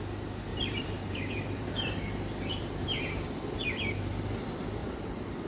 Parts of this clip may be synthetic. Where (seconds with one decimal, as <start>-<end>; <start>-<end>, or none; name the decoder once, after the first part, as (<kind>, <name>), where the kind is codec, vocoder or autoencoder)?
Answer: 0.5-3.8 (vocoder, BigVGAN v2); 4.8-5.5